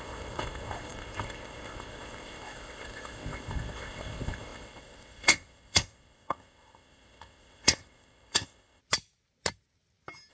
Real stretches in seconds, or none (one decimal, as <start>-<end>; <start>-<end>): 8.8-10.3